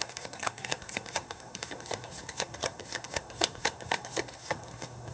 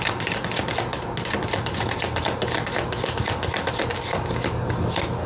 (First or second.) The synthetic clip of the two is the first